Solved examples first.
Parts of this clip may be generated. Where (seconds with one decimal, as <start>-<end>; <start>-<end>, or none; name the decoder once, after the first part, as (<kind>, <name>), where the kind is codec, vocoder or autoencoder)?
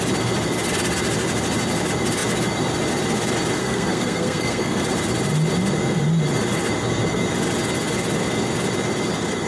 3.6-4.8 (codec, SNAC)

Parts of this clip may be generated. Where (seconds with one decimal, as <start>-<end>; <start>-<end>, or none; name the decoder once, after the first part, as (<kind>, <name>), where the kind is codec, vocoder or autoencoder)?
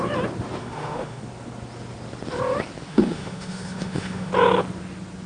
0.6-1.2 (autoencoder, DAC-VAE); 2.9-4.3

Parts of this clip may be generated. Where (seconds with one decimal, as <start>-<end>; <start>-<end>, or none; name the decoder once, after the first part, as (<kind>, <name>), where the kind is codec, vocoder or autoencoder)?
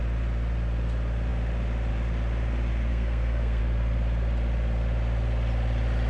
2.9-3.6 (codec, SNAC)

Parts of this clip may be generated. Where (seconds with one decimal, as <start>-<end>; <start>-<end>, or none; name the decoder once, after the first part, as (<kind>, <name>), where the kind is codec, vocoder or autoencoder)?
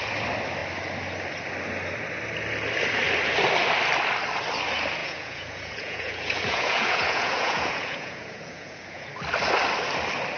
5.0-9.1 (vocoder, Vocos)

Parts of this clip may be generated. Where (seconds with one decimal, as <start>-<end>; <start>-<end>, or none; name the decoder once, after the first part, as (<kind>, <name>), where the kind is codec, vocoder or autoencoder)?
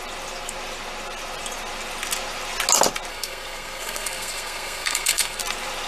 3.1-5.4 (codec, SNAC)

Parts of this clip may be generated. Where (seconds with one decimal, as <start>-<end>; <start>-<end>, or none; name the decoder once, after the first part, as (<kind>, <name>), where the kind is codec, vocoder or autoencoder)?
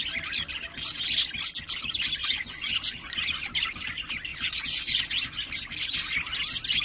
2.2-3.5 (vocoder, Vocos); 4.3-5.5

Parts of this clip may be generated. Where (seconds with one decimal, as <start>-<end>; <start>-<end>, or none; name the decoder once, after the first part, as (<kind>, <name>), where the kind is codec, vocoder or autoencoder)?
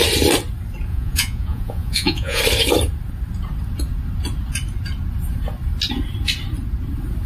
0.9-2.4 (vocoder, Vocos)